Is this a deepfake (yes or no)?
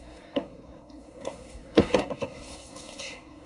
yes